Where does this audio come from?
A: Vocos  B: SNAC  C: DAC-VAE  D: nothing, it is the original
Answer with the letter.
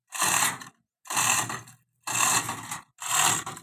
D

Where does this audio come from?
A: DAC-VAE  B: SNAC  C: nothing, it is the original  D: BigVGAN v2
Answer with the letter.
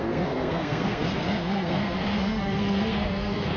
B